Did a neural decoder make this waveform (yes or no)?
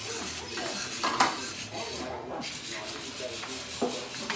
no